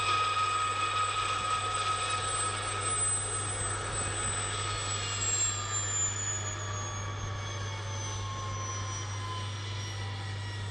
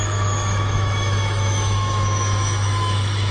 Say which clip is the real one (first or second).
first